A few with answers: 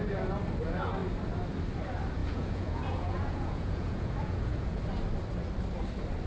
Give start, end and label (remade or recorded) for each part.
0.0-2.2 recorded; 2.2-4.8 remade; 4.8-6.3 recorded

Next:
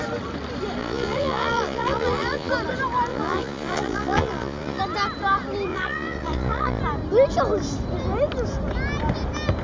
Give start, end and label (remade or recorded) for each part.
0.0-0.8 recorded; 0.8-2.5 remade; 2.5-3.1 recorded; 3.1-4.8 remade; 4.8-5.7 recorded; 5.7-6.8 remade; 6.8-9.6 recorded

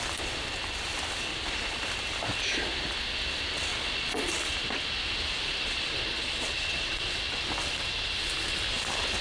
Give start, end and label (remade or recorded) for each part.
0.0-1.3 recorded; 1.3-1.8 remade; 1.8-3.7 recorded; 3.7-4.3 remade; 4.3-5.3 recorded; 5.3-7.2 remade; 7.2-9.2 recorded

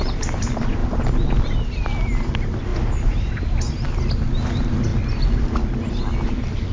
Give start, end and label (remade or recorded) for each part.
0.0-6.7 recorded